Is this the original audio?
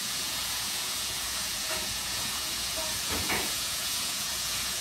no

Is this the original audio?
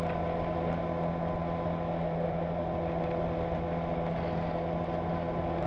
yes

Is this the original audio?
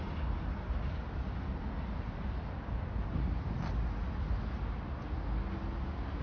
yes